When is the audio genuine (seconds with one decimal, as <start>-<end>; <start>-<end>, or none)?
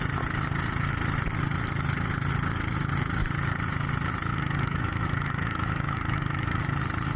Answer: 0.0-4.3; 6.6-7.2